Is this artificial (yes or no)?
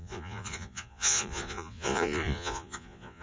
yes